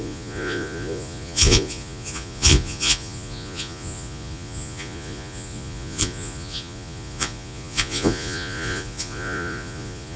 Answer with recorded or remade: remade